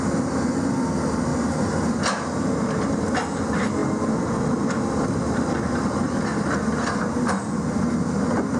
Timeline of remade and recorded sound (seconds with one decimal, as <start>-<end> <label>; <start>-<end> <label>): 0.0-8.6 recorded